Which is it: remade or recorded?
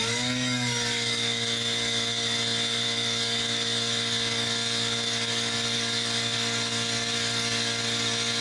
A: remade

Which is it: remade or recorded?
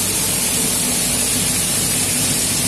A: recorded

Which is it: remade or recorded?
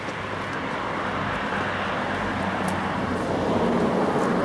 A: recorded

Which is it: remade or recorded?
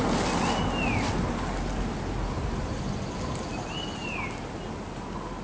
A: recorded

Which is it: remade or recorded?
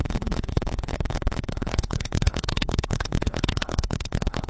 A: remade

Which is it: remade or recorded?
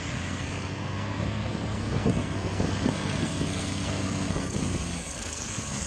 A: remade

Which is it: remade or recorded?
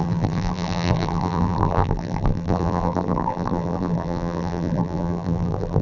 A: remade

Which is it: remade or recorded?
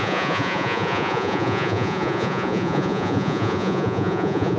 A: remade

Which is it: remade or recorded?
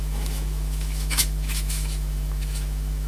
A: remade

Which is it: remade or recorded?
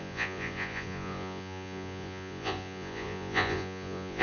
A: remade